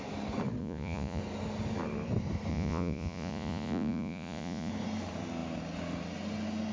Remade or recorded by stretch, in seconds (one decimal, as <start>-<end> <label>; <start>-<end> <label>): 0.0-0.6 recorded; 0.6-1.2 remade; 1.2-2.5 recorded; 2.5-4.7 remade; 4.7-6.7 recorded